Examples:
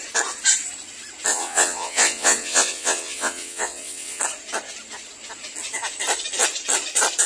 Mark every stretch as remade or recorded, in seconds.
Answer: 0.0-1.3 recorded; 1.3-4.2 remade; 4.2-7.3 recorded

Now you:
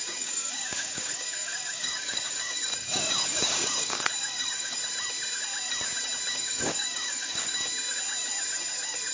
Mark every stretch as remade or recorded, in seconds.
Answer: 0.0-4.8 remade; 4.8-6.3 recorded; 6.3-7.5 remade; 7.5-9.1 recorded

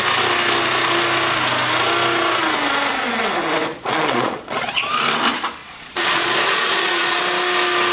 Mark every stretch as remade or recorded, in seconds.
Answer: 0.0-3.7 recorded; 3.7-4.8 remade; 4.8-5.6 recorded; 5.6-7.2 remade; 7.2-7.9 recorded

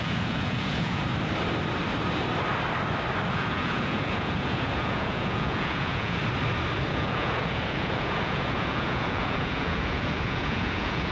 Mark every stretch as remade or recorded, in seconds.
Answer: 0.0-1.1 remade; 1.1-3.3 recorded; 3.3-6.2 remade; 6.2-6.9 recorded; 6.9-11.1 remade

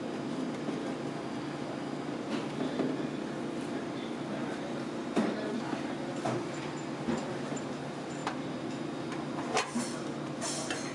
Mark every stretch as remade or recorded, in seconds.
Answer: 0.0-10.9 recorded

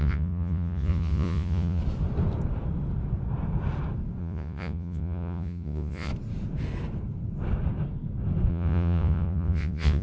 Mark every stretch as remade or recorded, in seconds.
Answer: 0.0-1.8 remade; 1.8-4.2 recorded; 4.2-6.1 remade; 6.1-8.5 recorded; 8.5-10.0 remade

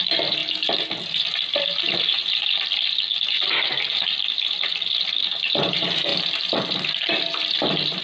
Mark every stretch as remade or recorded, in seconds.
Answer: 0.0-0.4 remade; 0.4-5.2 recorded; 5.2-6.1 remade; 6.1-7.2 recorded; 7.2-8.0 remade

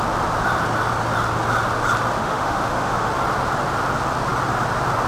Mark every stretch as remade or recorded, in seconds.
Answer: 0.0-2.2 recorded; 2.2-3.1 remade; 3.1-5.1 recorded